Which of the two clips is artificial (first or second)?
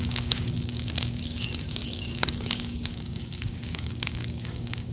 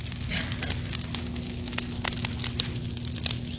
first